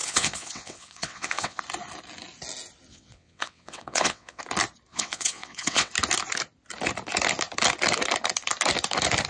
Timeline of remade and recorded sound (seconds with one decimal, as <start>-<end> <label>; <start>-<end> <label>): 0.0-1.6 remade; 1.6-2.9 recorded; 2.9-4.4 remade; 4.4-4.9 recorded; 4.9-5.9 remade; 5.9-9.3 recorded